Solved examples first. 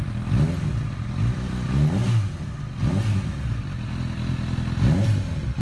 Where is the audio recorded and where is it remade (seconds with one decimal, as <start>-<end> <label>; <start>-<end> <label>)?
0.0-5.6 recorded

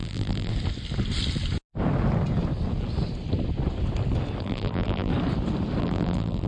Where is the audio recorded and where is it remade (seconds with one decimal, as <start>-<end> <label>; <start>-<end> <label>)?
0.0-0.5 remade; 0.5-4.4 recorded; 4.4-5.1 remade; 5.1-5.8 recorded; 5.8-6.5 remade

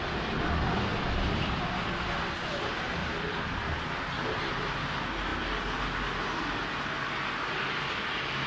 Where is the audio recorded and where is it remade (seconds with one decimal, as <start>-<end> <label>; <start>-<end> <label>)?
0.0-0.9 recorded; 0.9-1.7 remade; 1.7-3.0 recorded; 3.0-4.8 remade; 4.8-8.5 recorded

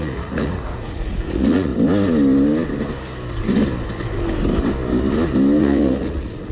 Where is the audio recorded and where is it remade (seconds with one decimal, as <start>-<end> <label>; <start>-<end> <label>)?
0.0-1.7 remade; 1.7-5.6 recorded; 5.6-6.5 remade